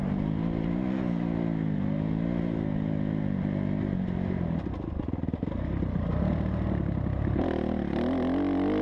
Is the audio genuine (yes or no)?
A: yes